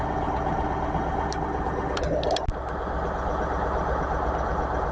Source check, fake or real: real